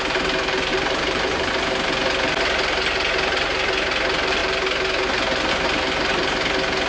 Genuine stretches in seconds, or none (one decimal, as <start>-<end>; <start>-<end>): 0.0-0.7; 1.5-6.9